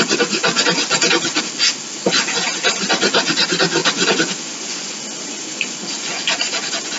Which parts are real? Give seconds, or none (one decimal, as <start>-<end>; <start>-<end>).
0.0-3.8